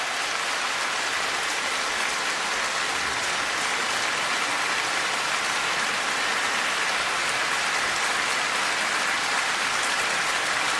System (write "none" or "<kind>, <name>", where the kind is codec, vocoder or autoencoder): none